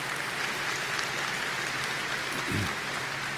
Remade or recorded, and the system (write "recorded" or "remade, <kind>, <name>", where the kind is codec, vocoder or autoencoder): recorded